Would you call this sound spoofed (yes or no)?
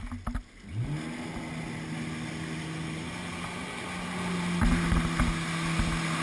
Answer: no